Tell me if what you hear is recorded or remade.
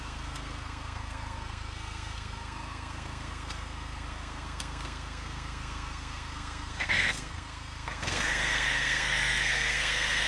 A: remade